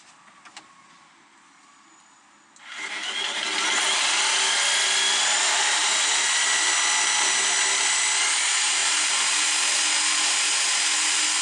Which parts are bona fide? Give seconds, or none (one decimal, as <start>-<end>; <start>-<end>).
0.0-11.4